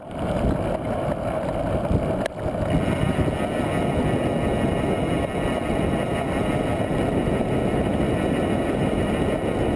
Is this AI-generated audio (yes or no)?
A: no